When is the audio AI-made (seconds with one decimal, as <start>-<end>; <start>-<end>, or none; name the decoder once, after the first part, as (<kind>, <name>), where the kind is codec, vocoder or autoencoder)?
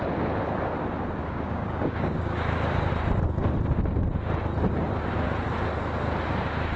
1.2-2.9 (codec, DAC)